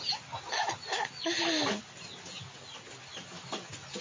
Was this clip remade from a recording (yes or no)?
no